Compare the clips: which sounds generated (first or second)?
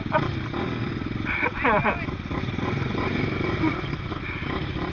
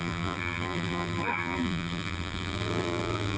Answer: second